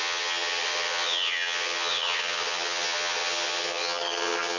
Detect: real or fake fake